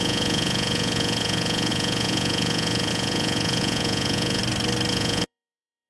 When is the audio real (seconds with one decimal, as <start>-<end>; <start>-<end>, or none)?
4.4-4.9